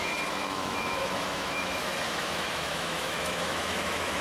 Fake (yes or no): yes